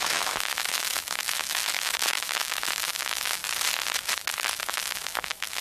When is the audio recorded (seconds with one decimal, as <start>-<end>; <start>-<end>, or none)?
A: 3.4-4.6